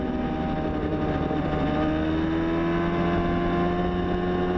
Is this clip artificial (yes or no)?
no